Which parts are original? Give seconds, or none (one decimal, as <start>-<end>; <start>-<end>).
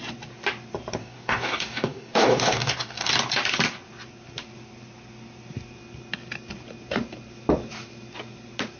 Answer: 0.0-1.0; 3.1-8.8